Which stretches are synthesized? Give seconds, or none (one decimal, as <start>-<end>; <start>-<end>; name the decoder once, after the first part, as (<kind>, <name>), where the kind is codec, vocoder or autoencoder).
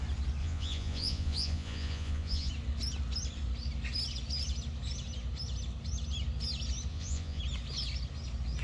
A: 0.4-2.5 (vocoder, Vocos); 6.9-7.4